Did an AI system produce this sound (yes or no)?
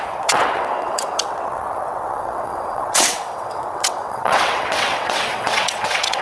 yes